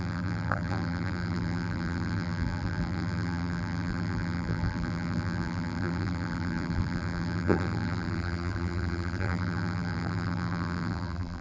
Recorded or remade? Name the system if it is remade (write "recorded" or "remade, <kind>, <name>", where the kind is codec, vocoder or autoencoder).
remade, vocoder, BigVGAN v2